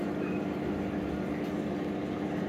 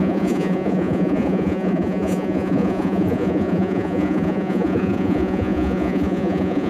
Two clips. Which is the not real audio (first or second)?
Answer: second